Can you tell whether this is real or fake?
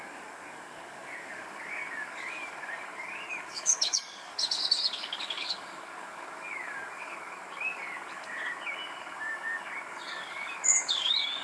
fake